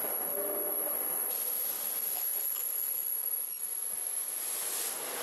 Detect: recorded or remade recorded